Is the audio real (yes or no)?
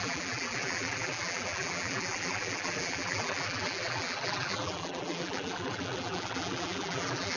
no